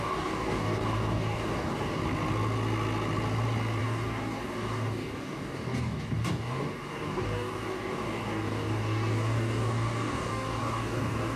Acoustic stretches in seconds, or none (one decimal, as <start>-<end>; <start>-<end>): 2.0-3.8